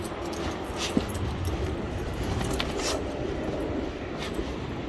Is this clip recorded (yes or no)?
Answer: yes